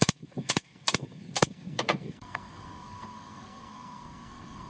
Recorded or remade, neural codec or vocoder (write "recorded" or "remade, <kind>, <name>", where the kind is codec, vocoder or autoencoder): remade, codec, SNAC